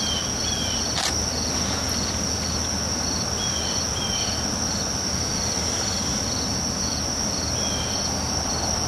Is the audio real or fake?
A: real